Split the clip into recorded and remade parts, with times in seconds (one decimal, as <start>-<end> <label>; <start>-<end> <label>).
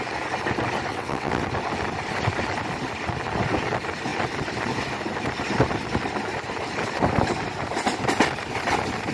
0.0-0.9 recorded; 0.9-1.4 remade; 1.4-9.1 recorded